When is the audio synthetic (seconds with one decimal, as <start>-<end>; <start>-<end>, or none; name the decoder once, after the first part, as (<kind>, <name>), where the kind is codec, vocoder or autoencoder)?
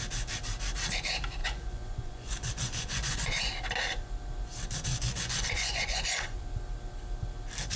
1.4-3.4 (vocoder, Vocos); 4.9-6.4